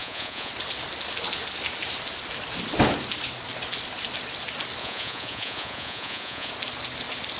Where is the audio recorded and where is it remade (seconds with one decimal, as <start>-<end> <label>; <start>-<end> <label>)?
0.0-0.5 remade; 0.5-4.8 recorded; 4.8-6.5 remade; 6.5-7.4 recorded